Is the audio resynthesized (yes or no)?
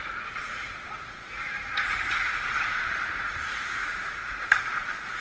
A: yes